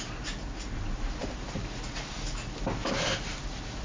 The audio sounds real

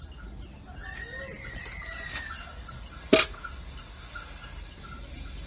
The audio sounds real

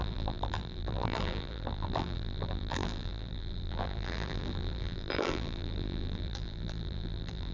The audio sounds fake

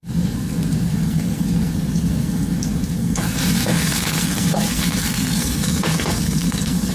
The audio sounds fake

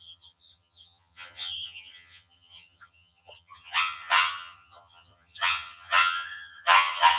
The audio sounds fake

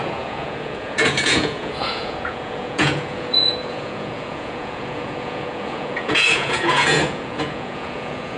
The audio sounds fake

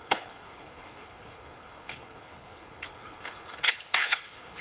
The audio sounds fake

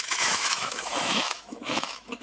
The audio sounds fake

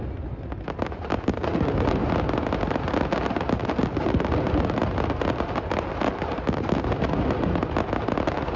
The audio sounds real